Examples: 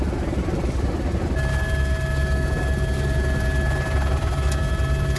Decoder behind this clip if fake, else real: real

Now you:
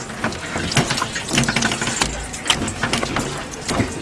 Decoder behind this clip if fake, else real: real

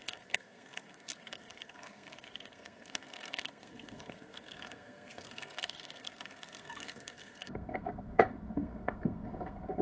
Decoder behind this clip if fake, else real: fake, codec, SNAC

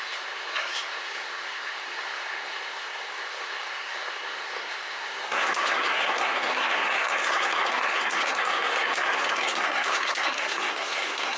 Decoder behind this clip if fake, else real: fake, codec, SNAC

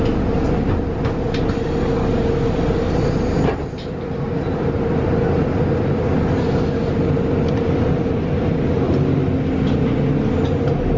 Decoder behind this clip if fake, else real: real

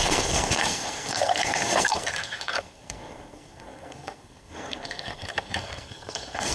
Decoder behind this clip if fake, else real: fake, codec, SNAC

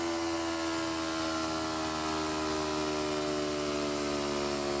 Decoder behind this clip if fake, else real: real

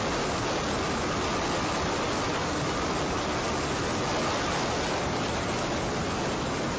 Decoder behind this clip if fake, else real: real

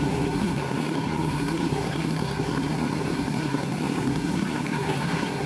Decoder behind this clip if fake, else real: fake, codec, SNAC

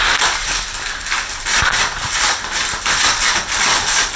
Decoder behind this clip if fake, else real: real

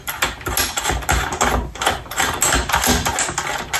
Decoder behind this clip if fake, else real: real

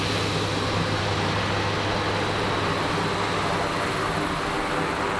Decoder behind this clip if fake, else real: real